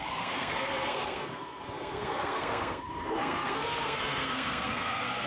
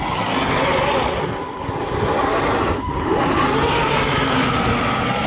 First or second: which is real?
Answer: second